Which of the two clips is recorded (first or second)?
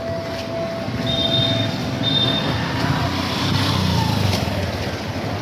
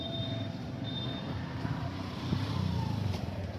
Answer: first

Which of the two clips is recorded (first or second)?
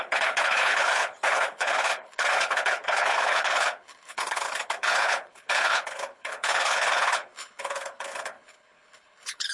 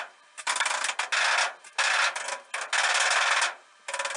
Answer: second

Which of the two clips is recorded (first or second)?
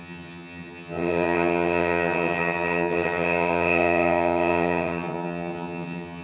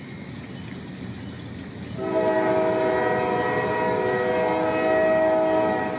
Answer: second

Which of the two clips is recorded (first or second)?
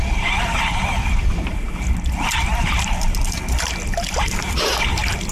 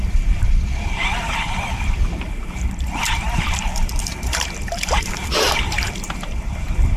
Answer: first